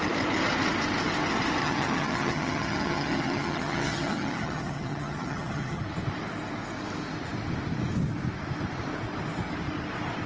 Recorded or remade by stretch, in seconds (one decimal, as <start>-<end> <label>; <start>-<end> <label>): 0.0-1.6 recorded; 1.6-5.8 remade; 5.8-10.3 recorded